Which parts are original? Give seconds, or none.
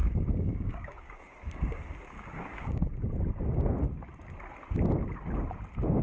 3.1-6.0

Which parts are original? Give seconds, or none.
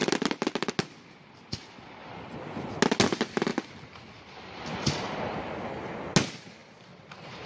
0.0-3.5; 5.6-6.6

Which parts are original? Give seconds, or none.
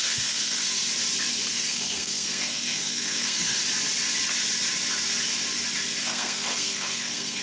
0.8-1.5; 3.6-6.0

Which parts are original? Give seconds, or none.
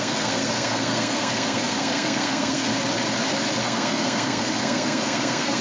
2.7-3.6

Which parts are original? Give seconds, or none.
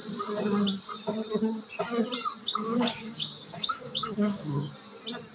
0.0-2.4; 4.7-5.3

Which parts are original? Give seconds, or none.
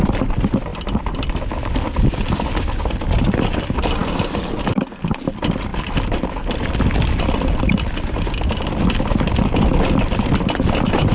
0.0-11.1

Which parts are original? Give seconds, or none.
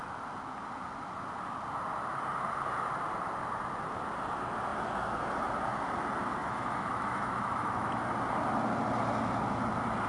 0.0-6.4; 8.0-10.1